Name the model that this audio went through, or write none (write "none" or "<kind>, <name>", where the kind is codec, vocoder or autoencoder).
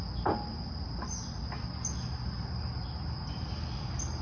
none